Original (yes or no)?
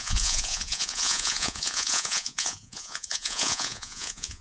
no